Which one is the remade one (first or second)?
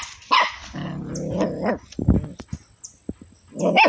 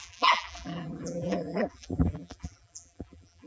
second